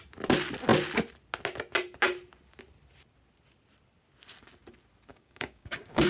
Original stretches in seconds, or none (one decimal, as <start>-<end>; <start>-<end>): 0.0-5.1